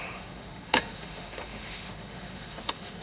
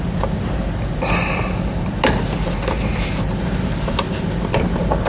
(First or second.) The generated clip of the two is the first